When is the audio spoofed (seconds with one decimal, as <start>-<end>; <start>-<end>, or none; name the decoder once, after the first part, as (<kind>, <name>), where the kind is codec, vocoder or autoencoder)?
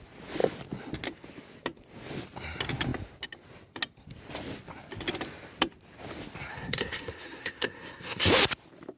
6.5-8.3 (codec, SNAC)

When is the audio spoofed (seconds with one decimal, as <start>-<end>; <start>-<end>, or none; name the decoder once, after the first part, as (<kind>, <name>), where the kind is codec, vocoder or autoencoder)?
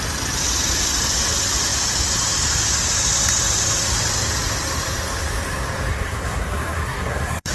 5.9-7.5 (codec, SNAC)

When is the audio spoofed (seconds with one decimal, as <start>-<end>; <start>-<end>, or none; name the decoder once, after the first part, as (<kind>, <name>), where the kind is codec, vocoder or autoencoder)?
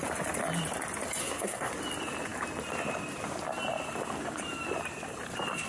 1.2-1.7 (codec, SNAC)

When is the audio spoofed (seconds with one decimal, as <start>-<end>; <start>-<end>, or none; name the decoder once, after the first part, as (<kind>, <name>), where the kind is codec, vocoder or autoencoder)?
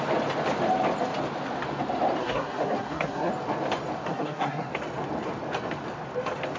2.2-3.3 (codec, SNAC); 4.1-4.7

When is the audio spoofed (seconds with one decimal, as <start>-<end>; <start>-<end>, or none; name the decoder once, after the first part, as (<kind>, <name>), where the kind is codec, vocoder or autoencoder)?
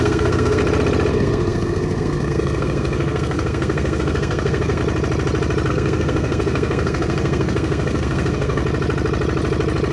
0.0-0.6 (codec, SNAC); 1.1-4.8; 5.7-8.6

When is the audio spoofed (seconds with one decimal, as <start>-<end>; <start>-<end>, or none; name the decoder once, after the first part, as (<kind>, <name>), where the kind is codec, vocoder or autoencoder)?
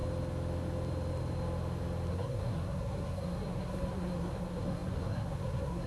2.1-5.9 (codec, SNAC)